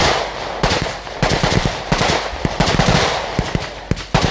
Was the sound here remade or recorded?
remade